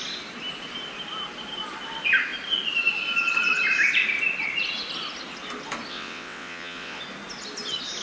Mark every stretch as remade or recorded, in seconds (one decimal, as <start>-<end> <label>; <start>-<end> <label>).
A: 0.0-5.9 recorded; 5.9-7.0 remade; 7.0-8.0 recorded